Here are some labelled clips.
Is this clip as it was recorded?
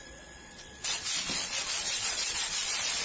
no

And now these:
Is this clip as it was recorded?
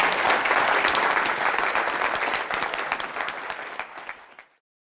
yes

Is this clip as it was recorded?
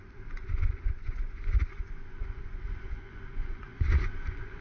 no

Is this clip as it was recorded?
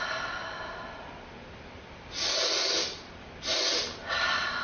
yes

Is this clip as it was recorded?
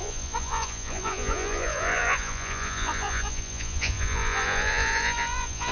no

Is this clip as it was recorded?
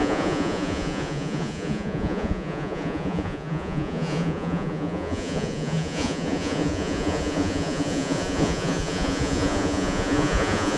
no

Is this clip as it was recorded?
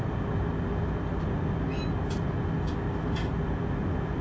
yes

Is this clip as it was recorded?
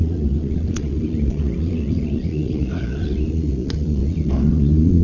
no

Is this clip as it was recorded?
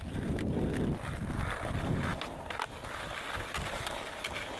yes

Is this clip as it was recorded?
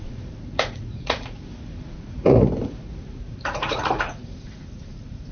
no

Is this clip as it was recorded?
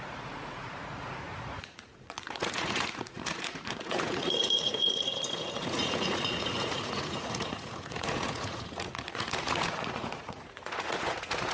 no